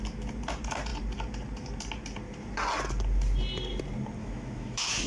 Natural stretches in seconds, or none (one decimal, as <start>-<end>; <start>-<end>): 0.0-4.2